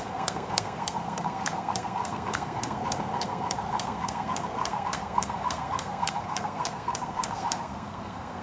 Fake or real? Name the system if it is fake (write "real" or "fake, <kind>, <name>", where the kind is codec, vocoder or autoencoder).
fake, codec, SNAC